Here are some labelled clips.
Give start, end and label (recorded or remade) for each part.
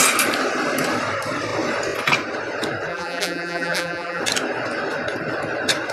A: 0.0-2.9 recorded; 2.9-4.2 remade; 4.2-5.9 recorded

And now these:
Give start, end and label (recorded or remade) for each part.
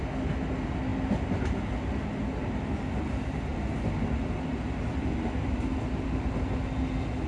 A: 0.0-3.5 recorded; 3.5-6.3 remade; 6.3-7.3 recorded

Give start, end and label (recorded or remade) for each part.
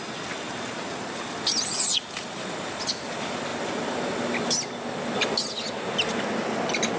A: 0.0-1.9 recorded; 1.9-2.7 remade; 2.7-7.0 recorded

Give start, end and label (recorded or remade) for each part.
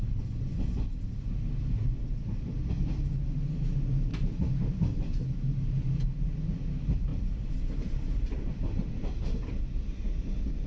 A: 0.0-4.1 recorded; 4.1-5.2 remade; 5.2-7.1 recorded; 7.1-9.6 remade; 9.6-10.7 recorded